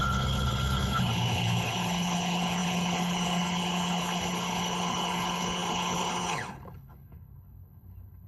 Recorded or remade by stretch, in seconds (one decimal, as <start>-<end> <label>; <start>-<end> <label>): 0.0-8.3 remade